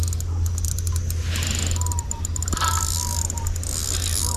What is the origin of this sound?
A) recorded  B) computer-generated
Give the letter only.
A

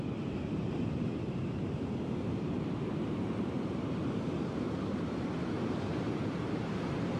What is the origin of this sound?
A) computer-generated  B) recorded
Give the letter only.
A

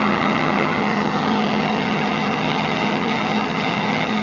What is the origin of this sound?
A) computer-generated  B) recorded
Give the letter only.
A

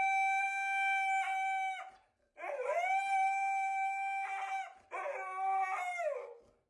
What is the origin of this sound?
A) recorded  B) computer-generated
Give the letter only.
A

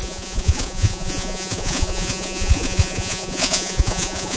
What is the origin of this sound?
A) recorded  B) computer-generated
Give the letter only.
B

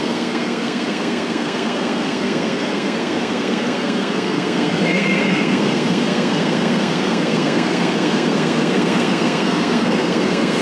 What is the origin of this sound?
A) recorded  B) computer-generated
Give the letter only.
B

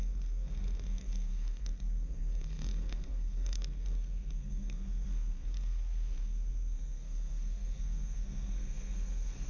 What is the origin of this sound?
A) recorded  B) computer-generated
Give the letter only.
B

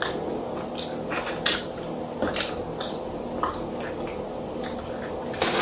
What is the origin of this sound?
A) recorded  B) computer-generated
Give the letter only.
A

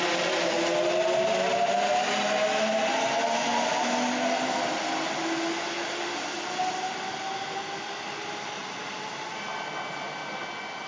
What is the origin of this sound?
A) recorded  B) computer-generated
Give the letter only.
A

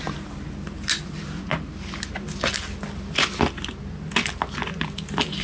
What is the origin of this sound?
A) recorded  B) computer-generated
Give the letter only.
A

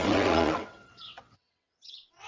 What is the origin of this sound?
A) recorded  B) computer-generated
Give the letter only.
B